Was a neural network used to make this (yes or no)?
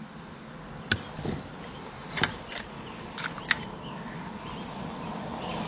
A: no